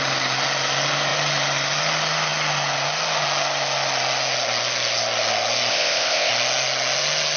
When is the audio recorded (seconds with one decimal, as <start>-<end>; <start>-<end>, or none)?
0.0-5.7; 6.3-7.4